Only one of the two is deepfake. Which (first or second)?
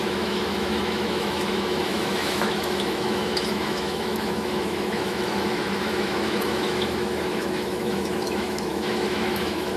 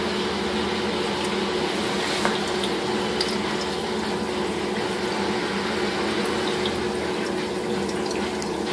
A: first